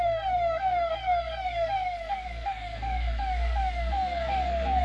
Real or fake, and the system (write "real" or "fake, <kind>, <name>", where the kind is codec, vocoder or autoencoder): fake, codec, SNAC